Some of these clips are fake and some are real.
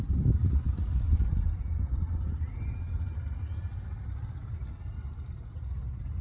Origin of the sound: real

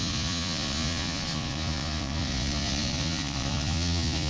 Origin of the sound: fake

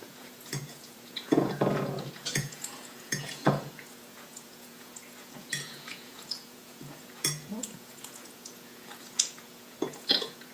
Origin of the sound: fake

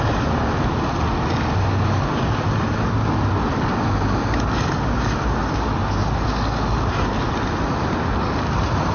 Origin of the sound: real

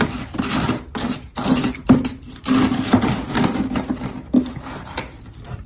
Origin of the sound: real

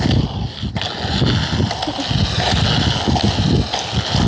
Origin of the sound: real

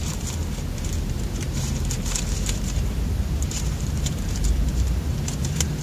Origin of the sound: fake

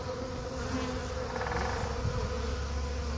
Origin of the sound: real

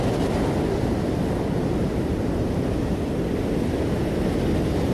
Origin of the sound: real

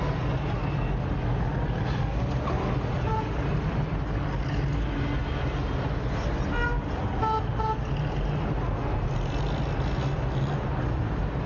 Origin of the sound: real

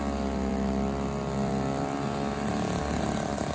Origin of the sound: real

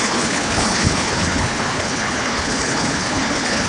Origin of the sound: fake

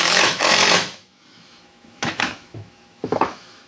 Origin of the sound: fake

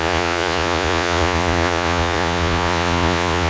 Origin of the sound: fake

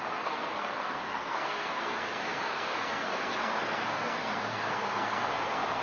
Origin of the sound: fake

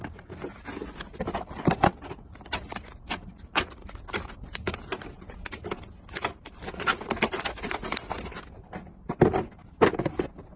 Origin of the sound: real